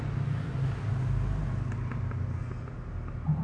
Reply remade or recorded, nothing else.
recorded